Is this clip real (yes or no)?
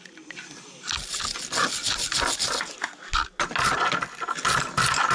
yes